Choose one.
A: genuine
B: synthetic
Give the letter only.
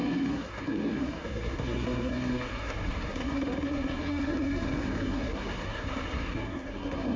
B